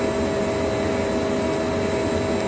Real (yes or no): yes